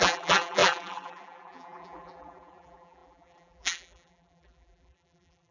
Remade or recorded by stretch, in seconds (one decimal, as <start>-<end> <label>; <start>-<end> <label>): 0.0-5.5 remade